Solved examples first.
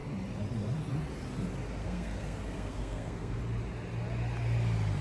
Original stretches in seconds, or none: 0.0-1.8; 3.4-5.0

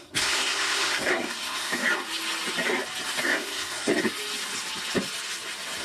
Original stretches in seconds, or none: 1.8-3.2; 3.9-5.8

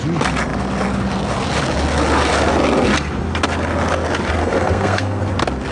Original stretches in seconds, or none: 0.0-4.4; 5.2-5.7

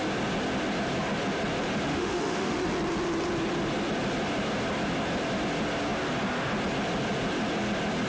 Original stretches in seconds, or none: 0.0-1.9; 2.7-8.1

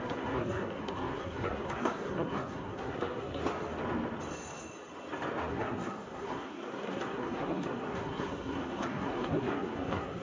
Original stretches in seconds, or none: 3.4-5.5

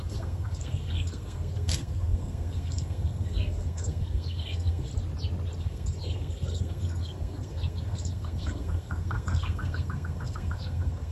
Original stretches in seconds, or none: 4.9-5.6